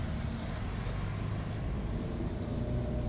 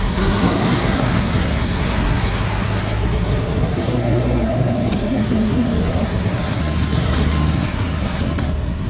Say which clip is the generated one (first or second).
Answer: second